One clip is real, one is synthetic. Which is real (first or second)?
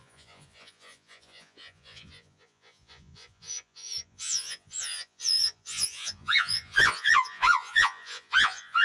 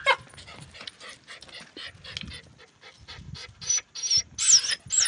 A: second